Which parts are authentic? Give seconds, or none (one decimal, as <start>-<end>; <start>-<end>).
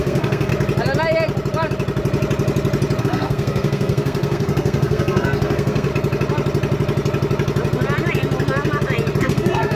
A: 0.5-3.0; 5.9-9.2